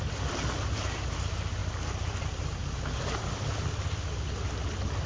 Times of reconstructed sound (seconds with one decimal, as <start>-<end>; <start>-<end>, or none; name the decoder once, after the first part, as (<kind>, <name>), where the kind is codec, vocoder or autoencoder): none